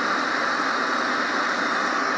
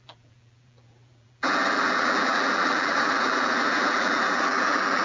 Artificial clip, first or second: second